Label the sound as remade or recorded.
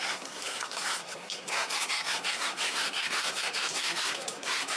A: remade